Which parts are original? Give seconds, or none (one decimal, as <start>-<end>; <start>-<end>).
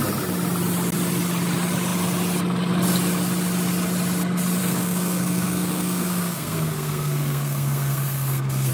0.0-4.6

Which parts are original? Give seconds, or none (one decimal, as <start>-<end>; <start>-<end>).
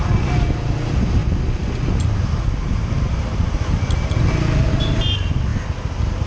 0.0-6.3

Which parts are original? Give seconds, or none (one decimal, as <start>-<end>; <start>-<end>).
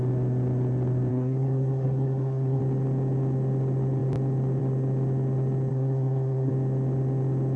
0.0-1.1; 2.6-5.7; 6.5-7.6